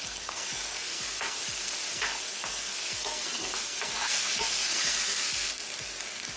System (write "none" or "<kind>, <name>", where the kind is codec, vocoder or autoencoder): codec, SNAC